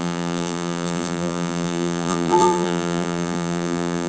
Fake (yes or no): yes